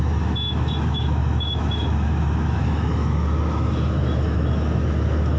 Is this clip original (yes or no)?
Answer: no